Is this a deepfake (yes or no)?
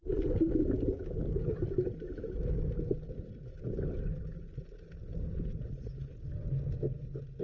no